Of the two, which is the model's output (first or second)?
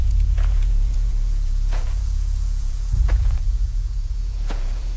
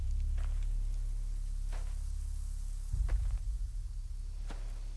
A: first